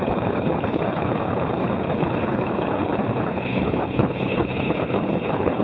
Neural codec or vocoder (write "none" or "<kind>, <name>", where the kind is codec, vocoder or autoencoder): codec, HILCodec